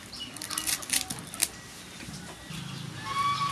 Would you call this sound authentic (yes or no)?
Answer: yes